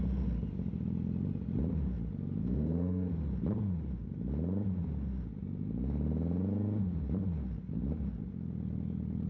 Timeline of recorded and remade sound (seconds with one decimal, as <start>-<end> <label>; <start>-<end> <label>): 0.0-2.4 recorded; 2.4-3.1 remade; 3.1-9.3 recorded